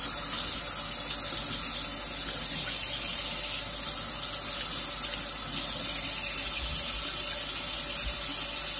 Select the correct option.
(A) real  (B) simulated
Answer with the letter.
A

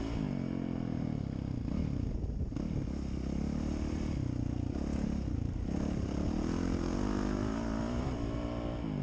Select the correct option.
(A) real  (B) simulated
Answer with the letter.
A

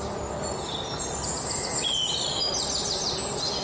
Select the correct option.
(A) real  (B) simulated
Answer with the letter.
A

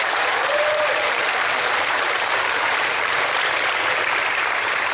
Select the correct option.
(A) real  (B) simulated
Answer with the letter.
B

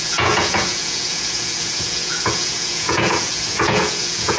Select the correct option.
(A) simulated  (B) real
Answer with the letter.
A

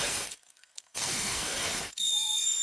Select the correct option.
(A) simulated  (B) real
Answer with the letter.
A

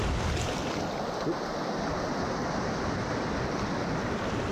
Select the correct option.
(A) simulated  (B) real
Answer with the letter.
B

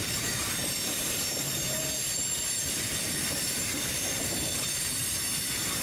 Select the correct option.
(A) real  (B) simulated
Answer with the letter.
B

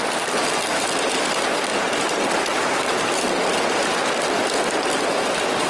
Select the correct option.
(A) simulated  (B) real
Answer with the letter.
B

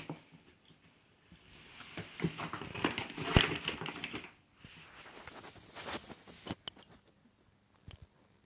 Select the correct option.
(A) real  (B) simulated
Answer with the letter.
A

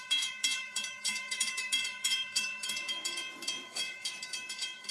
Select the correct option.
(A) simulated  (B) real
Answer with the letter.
A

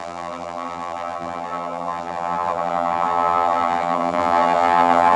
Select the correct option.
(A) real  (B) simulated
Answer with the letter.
B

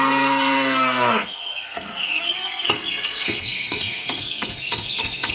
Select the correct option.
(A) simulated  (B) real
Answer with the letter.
A